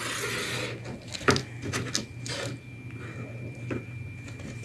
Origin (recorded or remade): recorded